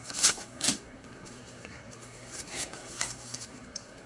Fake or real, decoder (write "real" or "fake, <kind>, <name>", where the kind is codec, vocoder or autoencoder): fake, codec, SNAC